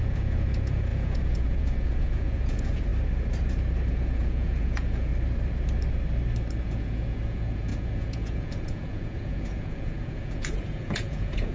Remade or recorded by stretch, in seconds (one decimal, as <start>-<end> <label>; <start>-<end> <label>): 0.0-2.9 remade; 2.9-3.9 recorded; 3.9-5.1 remade; 5.1-6.6 recorded; 6.6-11.5 remade